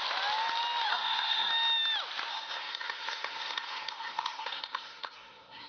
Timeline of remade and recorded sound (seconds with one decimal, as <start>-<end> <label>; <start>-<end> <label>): 0.0-0.9 recorded; 0.9-1.5 remade; 1.5-2.3 recorded; 2.3-5.7 remade